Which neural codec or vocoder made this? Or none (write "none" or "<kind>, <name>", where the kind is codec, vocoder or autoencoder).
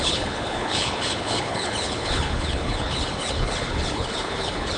codec, HILCodec